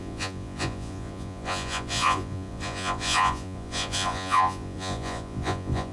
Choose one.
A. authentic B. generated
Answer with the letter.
B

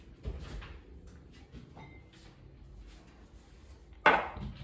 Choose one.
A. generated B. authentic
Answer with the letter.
B